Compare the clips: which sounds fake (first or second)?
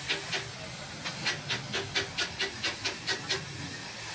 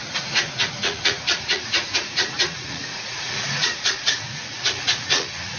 second